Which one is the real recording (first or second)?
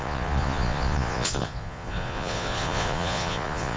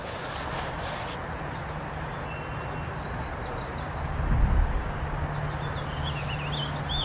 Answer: second